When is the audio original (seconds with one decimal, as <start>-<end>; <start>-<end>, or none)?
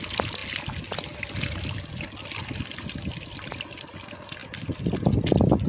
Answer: 0.0-5.7